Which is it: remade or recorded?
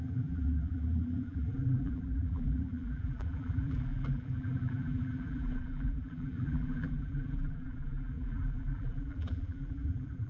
remade